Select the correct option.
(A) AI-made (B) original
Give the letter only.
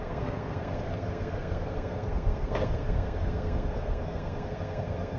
A